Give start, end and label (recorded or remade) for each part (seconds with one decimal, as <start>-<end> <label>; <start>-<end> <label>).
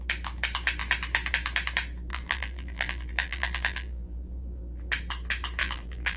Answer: 0.0-2.1 recorded; 2.1-4.6 remade; 4.6-5.6 recorded; 5.6-6.2 remade